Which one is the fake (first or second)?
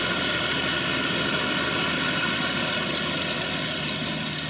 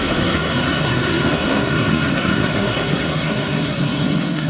second